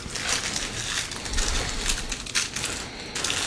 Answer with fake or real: real